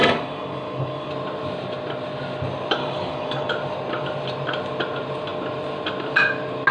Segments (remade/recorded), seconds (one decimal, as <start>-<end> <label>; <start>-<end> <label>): 0.0-1.1 remade; 1.1-2.8 recorded; 2.8-3.5 remade; 3.5-6.7 recorded